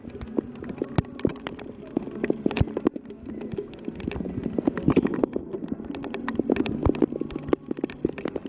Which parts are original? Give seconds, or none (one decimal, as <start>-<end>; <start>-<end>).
0.0-1.3; 4.3-8.5